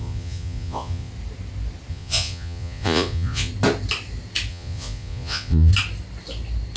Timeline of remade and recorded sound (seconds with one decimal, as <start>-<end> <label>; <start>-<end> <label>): 0.0-1.1 remade; 1.1-1.9 recorded; 1.9-3.5 remade; 3.5-4.5 recorded; 4.5-5.7 remade; 5.7-6.8 recorded